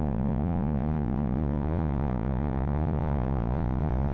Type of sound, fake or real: fake